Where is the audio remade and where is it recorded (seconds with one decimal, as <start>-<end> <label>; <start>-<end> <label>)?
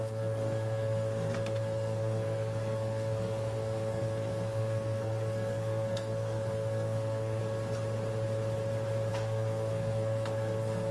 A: 0.0-7.4 remade; 7.4-9.1 recorded; 9.1-10.9 remade